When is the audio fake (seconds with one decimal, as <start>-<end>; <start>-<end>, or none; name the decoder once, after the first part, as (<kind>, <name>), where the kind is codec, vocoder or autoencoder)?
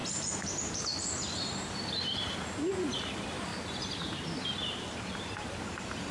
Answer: 0.0-2.7 (vocoder, BigVGAN v2); 3.5-6.1